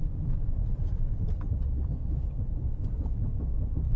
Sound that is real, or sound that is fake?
real